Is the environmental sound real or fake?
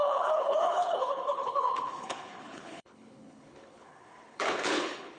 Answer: fake